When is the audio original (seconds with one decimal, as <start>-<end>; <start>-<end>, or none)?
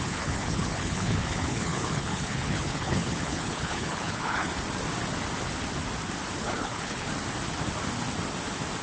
4.5-6.4; 7.1-8.8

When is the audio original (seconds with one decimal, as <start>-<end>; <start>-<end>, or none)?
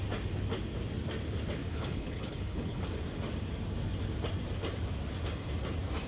0.0-1.7; 2.8-6.1